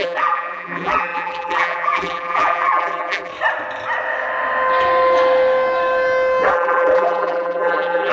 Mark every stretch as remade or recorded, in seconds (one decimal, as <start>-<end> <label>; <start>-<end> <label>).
0.0-3.3 remade; 3.3-6.5 recorded; 6.5-8.1 remade